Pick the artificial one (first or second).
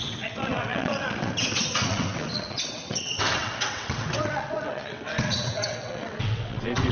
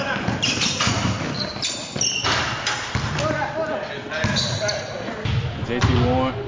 first